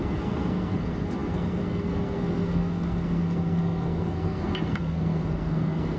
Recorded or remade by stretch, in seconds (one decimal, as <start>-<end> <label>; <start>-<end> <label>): 0.0-6.0 remade